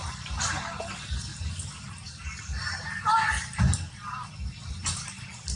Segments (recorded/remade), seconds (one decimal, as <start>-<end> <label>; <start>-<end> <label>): 0.0-5.6 recorded

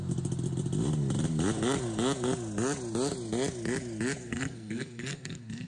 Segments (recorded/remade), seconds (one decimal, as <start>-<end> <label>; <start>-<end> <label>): 0.0-4.2 recorded; 4.2-5.7 remade